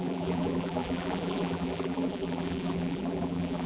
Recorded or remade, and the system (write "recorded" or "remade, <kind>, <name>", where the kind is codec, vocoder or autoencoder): remade, vocoder, BigVGAN v2